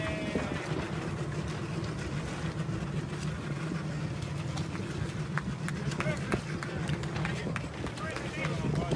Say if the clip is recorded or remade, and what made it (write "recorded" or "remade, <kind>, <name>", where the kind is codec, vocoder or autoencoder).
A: recorded